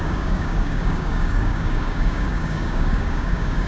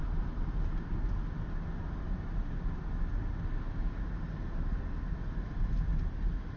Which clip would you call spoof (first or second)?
first